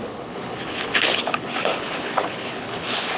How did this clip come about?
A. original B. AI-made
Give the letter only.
B